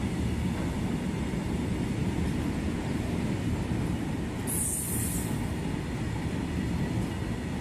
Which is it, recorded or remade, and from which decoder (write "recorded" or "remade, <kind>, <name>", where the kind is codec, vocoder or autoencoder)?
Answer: recorded